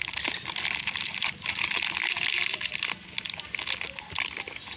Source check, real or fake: real